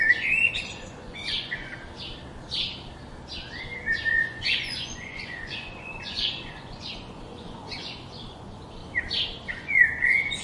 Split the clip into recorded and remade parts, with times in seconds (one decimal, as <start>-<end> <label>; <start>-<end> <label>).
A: 0.0-1.7 remade; 1.7-4.1 recorded; 4.1-8.8 remade; 8.8-9.5 recorded; 9.5-10.4 remade